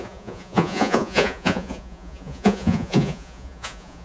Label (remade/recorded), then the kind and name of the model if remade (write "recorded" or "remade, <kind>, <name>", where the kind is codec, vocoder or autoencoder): remade, vocoder, Vocos